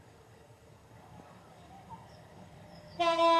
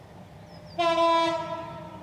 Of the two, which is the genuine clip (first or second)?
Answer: second